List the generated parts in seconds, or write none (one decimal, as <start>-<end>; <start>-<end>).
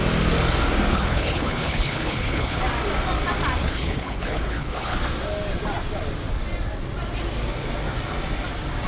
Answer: 0.9-2.6; 3.6-5.0